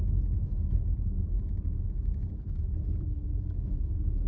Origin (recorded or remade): recorded